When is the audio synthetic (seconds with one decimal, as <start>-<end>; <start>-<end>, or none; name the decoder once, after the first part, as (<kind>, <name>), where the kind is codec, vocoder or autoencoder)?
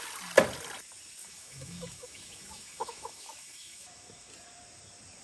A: 1.2-4.3 (autoencoder, DAC-VAE)